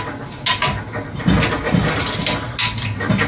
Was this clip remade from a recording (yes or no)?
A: no